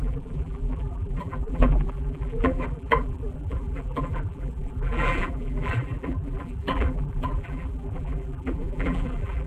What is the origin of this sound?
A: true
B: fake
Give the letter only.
B